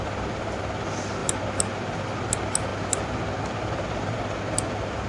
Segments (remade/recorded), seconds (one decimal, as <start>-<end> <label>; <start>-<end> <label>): 0.0-2.7 recorded; 2.7-3.2 remade; 3.2-5.1 recorded